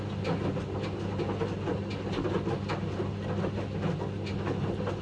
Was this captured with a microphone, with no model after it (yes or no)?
yes